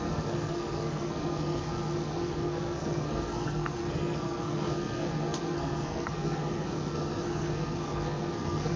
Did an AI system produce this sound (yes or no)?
yes